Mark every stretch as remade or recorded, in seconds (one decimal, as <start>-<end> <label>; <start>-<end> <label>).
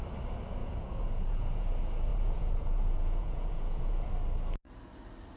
0.0-0.6 recorded; 0.6-1.7 remade; 1.7-2.1 recorded; 2.1-4.1 remade; 4.1-5.4 recorded